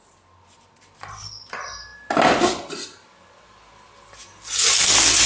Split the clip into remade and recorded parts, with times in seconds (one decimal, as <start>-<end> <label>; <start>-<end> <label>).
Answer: 0.0-5.3 recorded